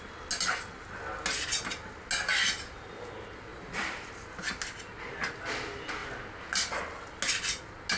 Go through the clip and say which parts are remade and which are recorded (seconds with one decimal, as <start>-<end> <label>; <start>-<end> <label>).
0.0-3.5 recorded; 3.5-4.4 remade; 4.4-8.0 recorded